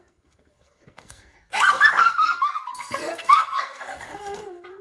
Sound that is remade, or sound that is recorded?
remade